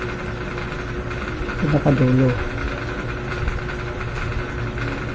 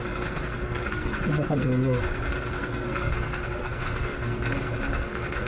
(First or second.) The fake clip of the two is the second